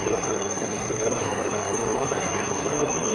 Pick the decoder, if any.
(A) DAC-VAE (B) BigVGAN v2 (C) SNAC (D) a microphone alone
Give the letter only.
C